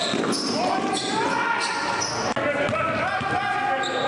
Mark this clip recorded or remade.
recorded